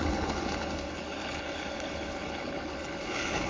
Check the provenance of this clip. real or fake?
fake